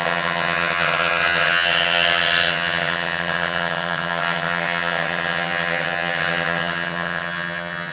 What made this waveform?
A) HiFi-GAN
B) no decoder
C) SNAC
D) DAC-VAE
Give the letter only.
A